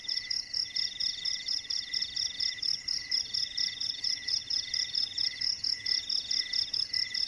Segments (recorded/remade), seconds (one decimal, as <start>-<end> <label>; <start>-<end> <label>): 0.0-1.0 recorded; 1.0-1.6 remade; 1.6-2.7 recorded; 2.7-5.6 remade; 5.6-7.3 recorded